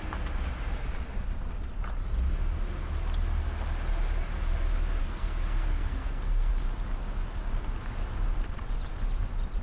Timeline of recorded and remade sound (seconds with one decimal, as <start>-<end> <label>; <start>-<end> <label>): 0.0-5.0 recorded; 5.0-6.5 remade; 6.5-9.6 recorded